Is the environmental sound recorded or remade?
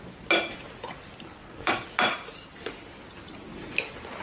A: recorded